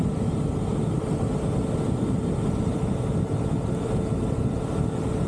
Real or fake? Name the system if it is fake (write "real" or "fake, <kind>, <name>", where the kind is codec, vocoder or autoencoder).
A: real